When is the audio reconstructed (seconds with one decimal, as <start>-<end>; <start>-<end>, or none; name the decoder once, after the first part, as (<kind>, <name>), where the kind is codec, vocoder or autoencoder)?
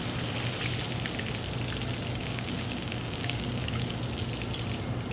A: 2.2-4.0 (codec, DAC)